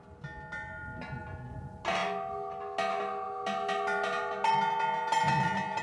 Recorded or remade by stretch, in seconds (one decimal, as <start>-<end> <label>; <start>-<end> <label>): 0.0-5.8 recorded